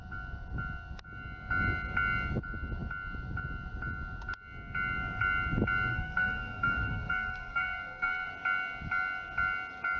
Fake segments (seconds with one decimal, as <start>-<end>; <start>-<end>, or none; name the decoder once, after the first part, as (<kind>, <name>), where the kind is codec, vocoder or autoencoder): 5.9-8.3 (codec, SNAC)